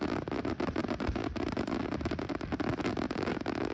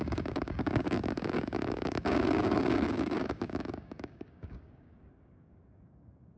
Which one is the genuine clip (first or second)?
first